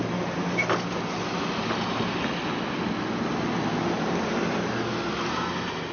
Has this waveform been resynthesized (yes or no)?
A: no